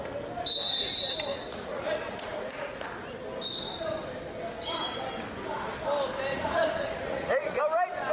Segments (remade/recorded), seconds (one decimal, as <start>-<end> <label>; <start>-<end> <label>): 0.0-1.3 recorded; 1.3-2.8 remade; 2.8-6.3 recorded; 6.3-7.6 remade; 7.6-8.1 recorded